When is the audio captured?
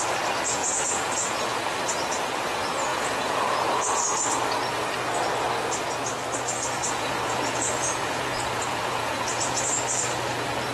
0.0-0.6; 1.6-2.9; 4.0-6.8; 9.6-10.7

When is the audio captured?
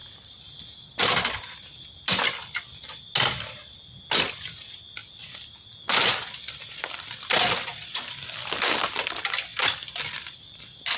0.0-11.0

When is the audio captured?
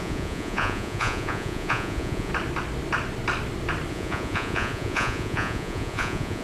2.3-3.9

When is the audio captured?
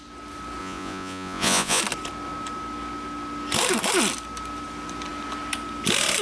0.0-0.6; 1.8-6.2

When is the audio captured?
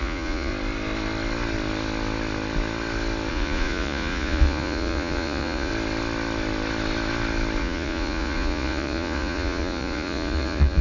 0.5-3.3; 5.7-7.6